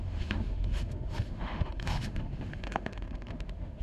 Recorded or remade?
remade